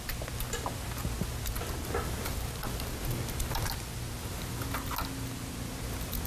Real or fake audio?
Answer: real